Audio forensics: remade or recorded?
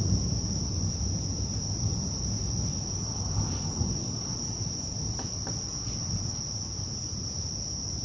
recorded